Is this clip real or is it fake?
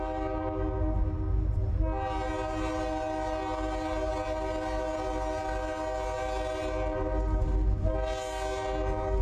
real